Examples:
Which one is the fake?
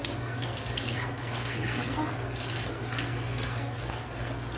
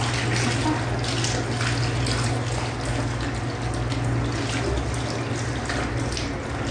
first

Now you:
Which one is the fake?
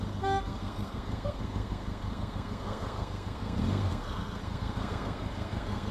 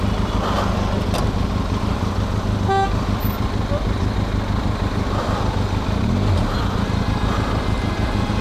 first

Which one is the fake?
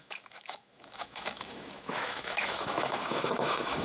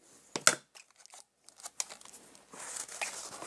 first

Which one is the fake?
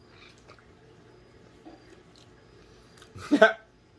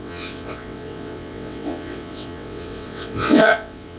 second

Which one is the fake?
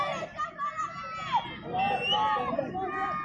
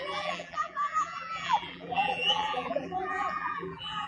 second